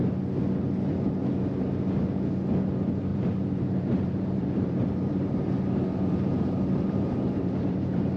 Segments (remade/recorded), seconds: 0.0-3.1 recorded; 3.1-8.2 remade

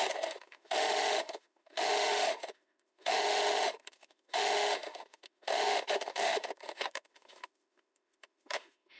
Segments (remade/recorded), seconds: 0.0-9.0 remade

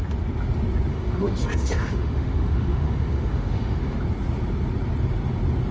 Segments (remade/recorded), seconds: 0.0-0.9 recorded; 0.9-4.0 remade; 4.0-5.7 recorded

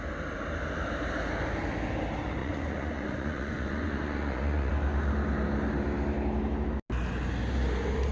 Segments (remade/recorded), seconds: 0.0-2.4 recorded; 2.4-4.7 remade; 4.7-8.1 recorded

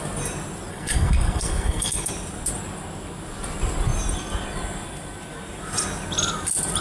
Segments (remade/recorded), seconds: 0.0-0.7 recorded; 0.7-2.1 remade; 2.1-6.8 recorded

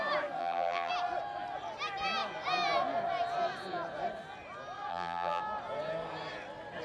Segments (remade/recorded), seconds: 0.0-0.4 recorded; 0.4-0.9 remade; 0.9-4.9 recorded; 4.9-5.4 remade; 5.4-6.8 recorded

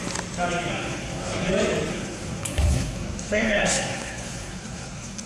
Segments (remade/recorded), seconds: 0.0-0.7 recorded; 0.7-1.5 remade; 1.5-1.9 recorded; 1.9-5.3 remade

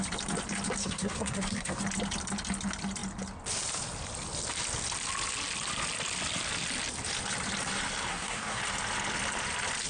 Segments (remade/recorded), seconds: 0.0-0.8 recorded; 0.8-1.8 remade; 1.8-8.1 recorded; 8.1-8.6 remade; 8.6-9.9 recorded